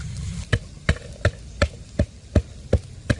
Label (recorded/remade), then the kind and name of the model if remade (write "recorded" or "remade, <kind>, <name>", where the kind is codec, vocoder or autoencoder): recorded